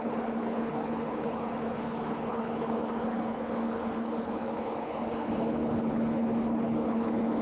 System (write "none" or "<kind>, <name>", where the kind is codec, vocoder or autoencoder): codec, HILCodec